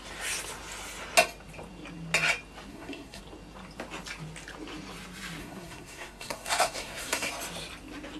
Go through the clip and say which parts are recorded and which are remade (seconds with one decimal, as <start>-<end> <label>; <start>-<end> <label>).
0.0-2.7 recorded; 2.7-3.2 remade; 3.2-5.4 recorded; 5.4-7.3 remade; 7.3-8.2 recorded